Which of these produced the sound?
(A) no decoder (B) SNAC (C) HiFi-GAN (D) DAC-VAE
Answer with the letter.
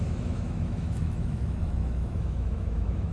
D